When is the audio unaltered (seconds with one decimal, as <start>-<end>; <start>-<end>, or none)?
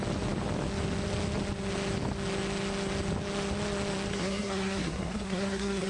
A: 0.0-4.1